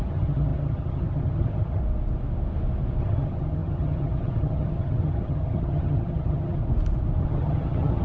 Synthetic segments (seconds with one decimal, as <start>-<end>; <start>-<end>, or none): 0.0-1.8; 3.0-6.6; 7.2-8.0